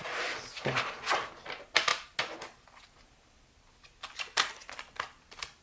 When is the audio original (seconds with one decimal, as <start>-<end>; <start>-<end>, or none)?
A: 0.0-5.6

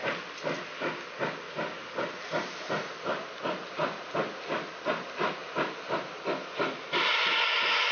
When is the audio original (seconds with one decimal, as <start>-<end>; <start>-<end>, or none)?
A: 0.0-7.9

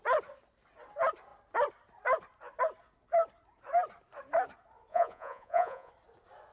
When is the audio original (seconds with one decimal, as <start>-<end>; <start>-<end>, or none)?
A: 0.0-4.9; 5.9-6.5

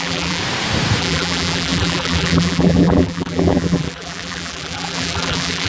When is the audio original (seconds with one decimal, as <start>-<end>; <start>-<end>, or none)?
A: 0.4-1.0

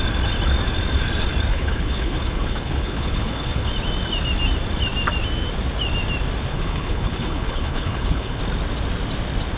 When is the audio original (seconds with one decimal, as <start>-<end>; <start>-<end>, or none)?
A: 0.0-1.5; 3.7-6.5; 8.4-9.6

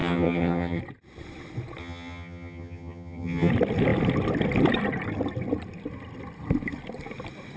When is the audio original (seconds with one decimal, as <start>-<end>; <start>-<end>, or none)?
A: 0.8-1.8; 3.5-7.6